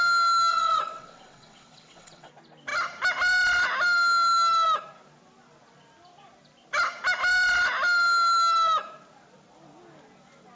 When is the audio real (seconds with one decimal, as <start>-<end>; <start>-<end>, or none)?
0.0-0.5; 2.3-10.6